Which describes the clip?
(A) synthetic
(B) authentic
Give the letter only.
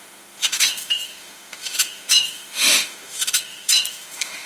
A